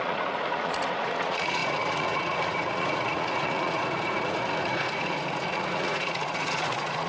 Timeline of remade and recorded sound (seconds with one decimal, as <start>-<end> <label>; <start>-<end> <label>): 0.0-7.1 remade